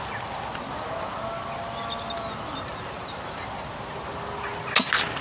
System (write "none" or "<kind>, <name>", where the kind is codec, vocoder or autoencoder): none